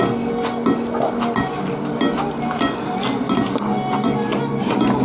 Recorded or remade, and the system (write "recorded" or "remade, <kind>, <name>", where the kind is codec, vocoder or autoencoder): recorded